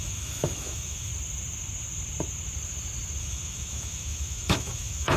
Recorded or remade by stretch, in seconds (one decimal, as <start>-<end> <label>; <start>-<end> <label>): 0.0-1.1 remade; 1.1-3.2 recorded; 3.2-5.2 remade